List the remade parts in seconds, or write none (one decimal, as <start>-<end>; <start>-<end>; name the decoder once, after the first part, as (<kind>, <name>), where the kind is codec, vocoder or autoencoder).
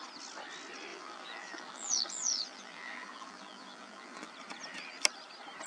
0.9-4.3 (vocoder, BigVGAN v2)